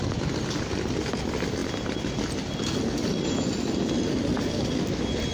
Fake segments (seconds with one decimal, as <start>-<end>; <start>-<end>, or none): none